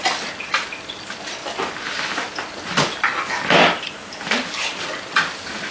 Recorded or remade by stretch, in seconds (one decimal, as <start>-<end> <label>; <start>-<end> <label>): 0.0-5.7 recorded